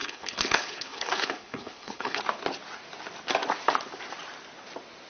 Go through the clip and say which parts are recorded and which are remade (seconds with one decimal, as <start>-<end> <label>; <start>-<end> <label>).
0.0-2.2 remade; 2.2-5.1 recorded